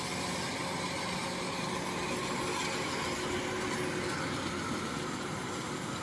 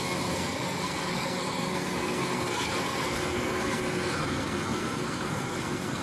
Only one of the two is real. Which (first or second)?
first